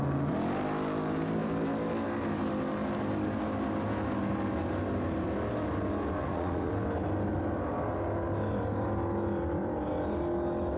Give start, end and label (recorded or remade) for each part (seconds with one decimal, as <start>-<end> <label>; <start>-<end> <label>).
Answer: 0.0-6.2 recorded; 6.2-6.7 remade; 6.7-10.8 recorded